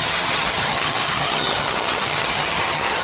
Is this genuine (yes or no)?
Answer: no